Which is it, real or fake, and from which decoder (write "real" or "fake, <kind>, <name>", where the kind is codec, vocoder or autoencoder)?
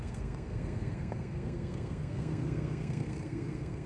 fake, codec, SNAC